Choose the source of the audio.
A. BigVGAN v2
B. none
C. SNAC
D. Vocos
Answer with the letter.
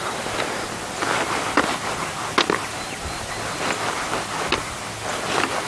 B